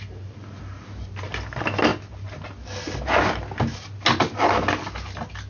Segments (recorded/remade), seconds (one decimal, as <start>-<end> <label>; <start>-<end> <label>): 0.0-5.5 recorded